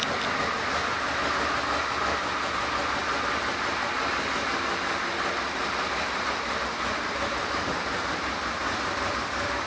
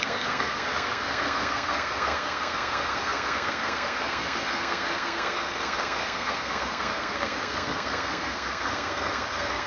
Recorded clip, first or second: first